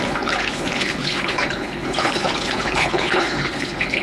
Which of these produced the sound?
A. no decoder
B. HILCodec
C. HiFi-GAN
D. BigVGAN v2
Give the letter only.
B